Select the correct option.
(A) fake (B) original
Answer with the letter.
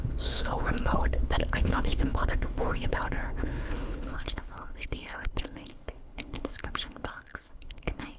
A